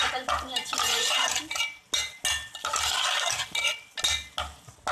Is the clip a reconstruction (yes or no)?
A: no